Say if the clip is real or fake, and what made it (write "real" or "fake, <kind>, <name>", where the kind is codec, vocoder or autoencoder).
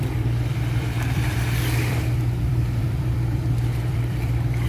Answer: fake, vocoder, BigVGAN v2